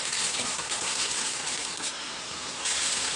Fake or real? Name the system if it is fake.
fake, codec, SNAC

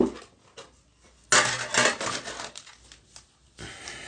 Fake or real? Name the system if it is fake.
real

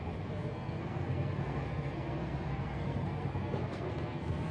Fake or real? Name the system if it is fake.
fake, codec, SNAC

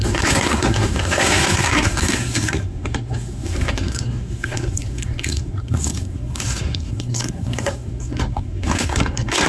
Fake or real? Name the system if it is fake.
fake, codec, SNAC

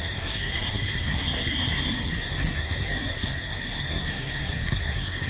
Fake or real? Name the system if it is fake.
fake, codec, SNAC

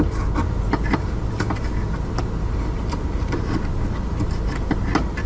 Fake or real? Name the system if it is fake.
real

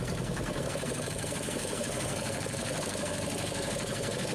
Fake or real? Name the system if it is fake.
fake, codec, SNAC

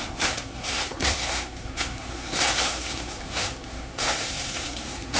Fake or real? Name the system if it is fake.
fake, codec, SNAC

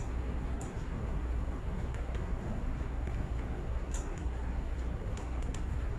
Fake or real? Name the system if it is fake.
fake, codec, SNAC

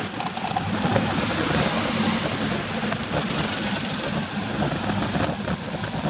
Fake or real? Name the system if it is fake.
real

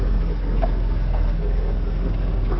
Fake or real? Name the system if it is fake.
fake, codec, SNAC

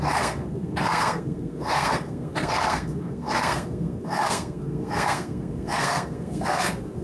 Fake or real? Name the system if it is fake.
fake, codec, SNAC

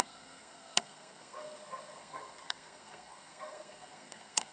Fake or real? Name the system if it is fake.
fake, codec, SNAC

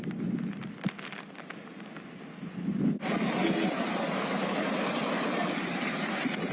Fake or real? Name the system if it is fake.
real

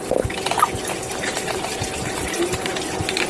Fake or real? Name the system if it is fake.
real